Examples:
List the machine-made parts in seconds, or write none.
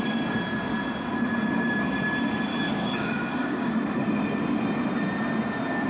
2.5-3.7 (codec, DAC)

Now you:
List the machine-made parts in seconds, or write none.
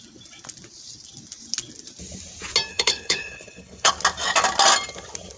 2.7-3.9 (codec, HILCodec)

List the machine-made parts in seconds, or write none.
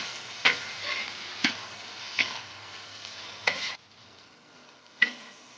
0.0-1.0 (codec, SNAC); 1.5-3.5; 4.0-5.6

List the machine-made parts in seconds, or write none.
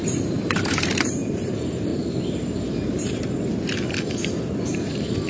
0.0-1.9 (vocoder, BigVGAN v2); 2.7-3.4; 4.7-5.3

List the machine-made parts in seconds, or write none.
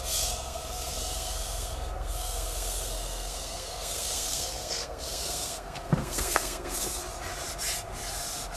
0.0-7.0 (codec, SNAC)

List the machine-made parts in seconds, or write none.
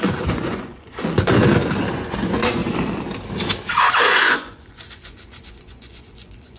0.0-1.4 (vocoder, Vocos); 1.9-2.6; 3.8-6.6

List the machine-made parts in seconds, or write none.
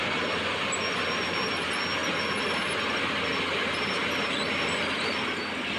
0.0-2.0 (vocoder, BigVGAN v2); 2.9-4.0; 4.6-5.8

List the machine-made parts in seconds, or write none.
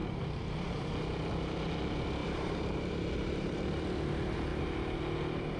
0.0-0.9 (vocoder, BigVGAN v2); 2.2-3.8; 4.5-5.0